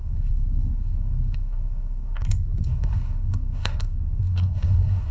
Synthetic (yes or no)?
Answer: yes